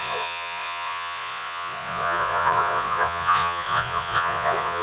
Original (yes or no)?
no